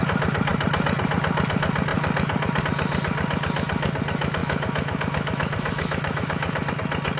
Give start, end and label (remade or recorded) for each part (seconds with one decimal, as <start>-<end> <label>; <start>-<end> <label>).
0.0-4.4 recorded; 4.4-6.7 remade; 6.7-7.2 recorded